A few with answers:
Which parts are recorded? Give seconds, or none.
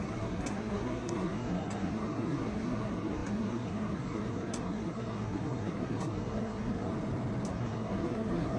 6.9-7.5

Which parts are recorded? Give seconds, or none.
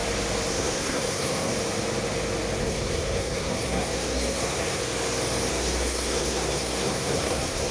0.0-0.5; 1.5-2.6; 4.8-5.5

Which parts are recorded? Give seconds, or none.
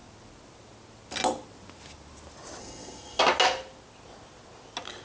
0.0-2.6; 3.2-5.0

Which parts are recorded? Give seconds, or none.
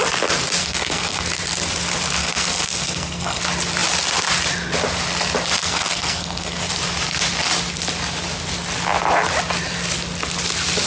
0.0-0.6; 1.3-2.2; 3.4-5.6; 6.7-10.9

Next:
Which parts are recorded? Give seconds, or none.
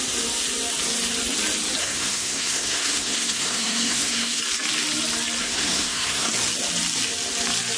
0.0-1.8; 4.4-5.4; 6.3-7.8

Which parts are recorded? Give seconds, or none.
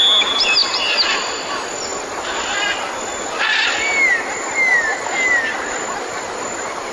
0.0-6.9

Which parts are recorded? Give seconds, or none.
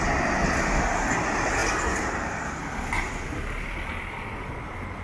0.0-5.0